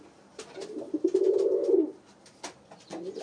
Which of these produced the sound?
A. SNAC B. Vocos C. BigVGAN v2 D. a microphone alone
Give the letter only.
D